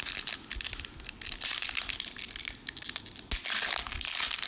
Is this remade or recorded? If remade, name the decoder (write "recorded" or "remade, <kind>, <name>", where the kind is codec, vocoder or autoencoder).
recorded